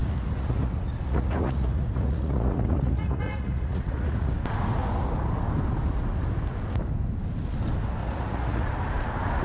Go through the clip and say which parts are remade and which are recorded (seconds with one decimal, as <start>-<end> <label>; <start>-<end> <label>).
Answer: 0.0-4.3 remade; 4.3-8.0 recorded; 8.0-8.7 remade; 8.7-9.4 recorded